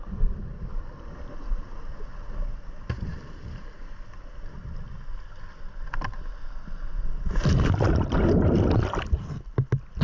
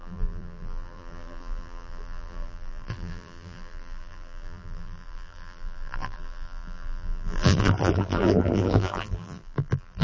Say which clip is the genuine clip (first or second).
first